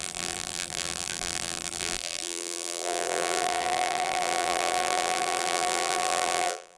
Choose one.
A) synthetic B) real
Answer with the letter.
A